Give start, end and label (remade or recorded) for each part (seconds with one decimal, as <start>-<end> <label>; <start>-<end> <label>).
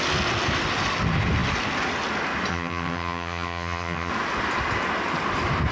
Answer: 0.0-2.5 recorded; 2.5-4.1 remade; 4.1-5.7 recorded